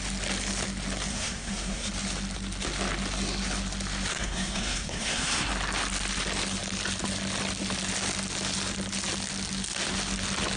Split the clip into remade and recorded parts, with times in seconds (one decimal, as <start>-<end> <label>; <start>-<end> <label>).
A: 0.0-1.1 recorded; 1.1-1.9 remade; 1.9-4.1 recorded; 4.1-5.5 remade; 5.5-10.6 recorded